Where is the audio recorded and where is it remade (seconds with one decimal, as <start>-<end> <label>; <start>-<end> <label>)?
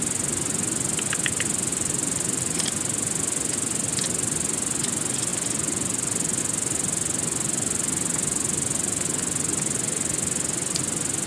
0.0-1.7 recorded; 1.7-3.2 remade; 3.2-11.3 recorded